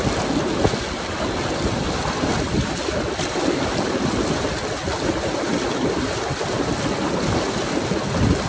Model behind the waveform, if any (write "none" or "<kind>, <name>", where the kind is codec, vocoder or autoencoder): none